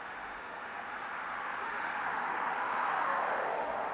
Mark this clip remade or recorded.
remade